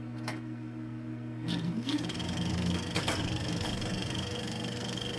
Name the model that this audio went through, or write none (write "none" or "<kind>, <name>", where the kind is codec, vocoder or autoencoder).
codec, SNAC